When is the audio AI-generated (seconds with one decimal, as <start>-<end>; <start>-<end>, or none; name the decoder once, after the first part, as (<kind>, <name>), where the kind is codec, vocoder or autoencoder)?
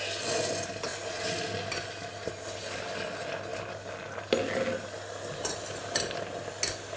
none